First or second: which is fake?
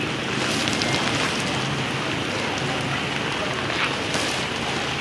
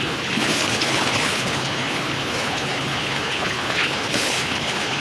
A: second